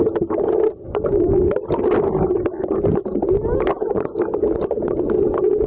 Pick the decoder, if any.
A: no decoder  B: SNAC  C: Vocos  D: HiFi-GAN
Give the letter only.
A